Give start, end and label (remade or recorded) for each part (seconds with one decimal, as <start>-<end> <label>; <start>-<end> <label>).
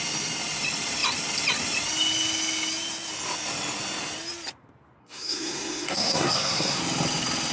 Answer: 0.0-5.0 recorded; 5.0-6.8 remade; 6.8-7.5 recorded